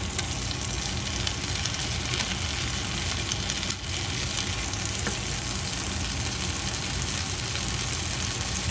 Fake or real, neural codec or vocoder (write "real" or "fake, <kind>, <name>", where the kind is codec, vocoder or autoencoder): real